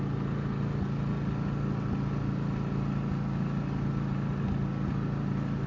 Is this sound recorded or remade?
recorded